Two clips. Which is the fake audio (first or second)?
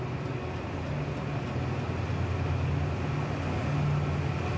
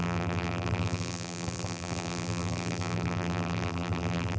second